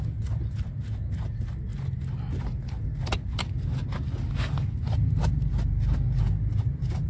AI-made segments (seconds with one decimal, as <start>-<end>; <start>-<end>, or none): none